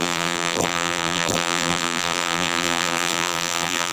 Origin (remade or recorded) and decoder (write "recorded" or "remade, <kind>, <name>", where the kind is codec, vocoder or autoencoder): remade, vocoder, BigVGAN v2